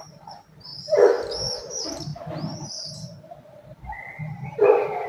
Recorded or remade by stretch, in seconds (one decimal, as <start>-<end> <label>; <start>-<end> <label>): 0.0-0.7 remade; 0.7-1.2 recorded; 1.2-2.1 remade; 2.1-4.1 recorded; 4.1-5.1 remade